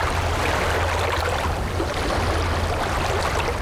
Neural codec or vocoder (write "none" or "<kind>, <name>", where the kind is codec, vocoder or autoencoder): none